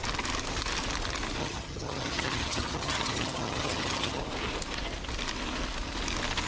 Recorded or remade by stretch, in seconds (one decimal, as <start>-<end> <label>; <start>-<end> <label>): 0.0-1.4 recorded; 1.4-4.2 remade; 4.2-6.5 recorded